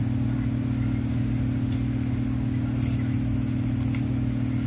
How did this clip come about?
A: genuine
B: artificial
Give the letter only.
A